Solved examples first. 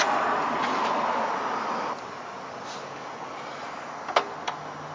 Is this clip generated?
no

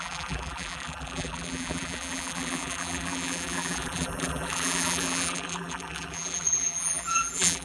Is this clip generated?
yes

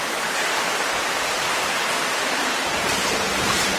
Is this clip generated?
yes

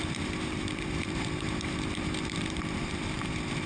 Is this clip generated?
yes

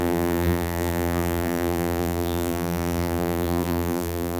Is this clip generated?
yes